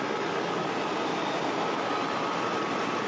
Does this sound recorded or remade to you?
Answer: recorded